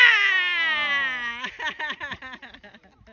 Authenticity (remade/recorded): recorded